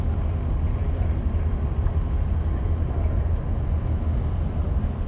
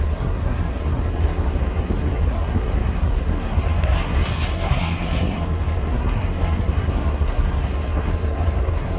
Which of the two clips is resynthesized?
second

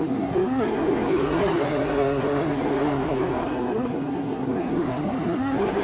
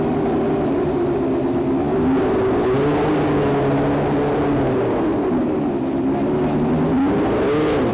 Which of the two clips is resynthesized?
first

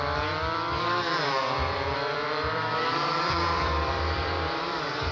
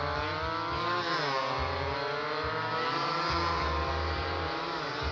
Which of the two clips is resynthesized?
first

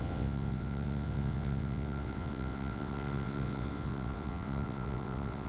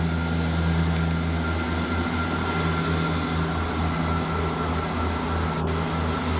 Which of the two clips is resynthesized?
first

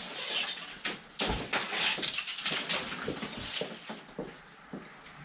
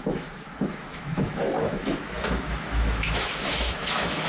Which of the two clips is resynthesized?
second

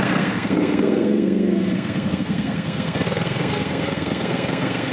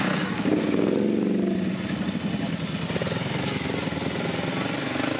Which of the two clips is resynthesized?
first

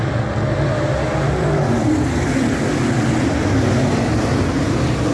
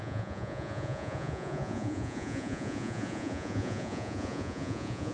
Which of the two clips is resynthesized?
second